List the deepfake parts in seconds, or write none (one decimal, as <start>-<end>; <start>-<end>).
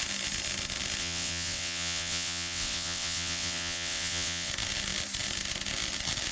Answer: 1.0-4.5